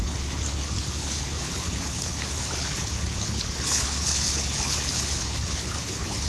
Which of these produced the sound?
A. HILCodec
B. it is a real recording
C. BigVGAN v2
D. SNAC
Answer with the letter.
A